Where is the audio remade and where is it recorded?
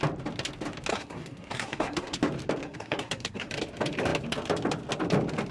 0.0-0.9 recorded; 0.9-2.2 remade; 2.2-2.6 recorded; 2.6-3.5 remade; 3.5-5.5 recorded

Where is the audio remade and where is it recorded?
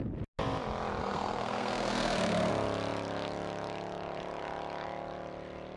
0.0-1.0 recorded; 1.0-2.5 remade; 2.5-5.8 recorded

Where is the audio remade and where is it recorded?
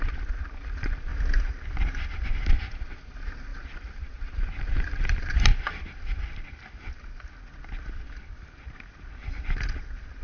0.0-1.1 remade; 1.1-2.5 recorded; 2.5-5.5 remade; 5.5-10.2 recorded